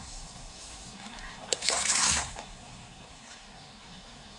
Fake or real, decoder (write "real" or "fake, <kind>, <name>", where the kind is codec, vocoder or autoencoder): fake, codec, SNAC